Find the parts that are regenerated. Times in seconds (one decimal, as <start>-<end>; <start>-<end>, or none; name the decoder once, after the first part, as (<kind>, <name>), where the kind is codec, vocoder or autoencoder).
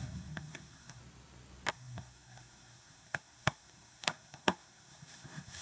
0.0-1.0 (codec, SNAC); 1.7-5.6